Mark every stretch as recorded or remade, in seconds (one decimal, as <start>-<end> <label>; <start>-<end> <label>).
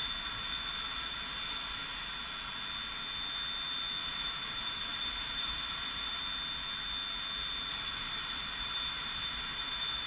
0.0-2.1 remade; 2.1-4.0 recorded; 4.0-6.2 remade; 6.2-7.7 recorded; 7.7-10.1 remade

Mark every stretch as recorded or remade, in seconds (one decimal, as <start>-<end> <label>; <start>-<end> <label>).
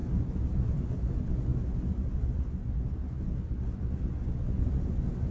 0.0-0.9 remade; 0.9-5.3 recorded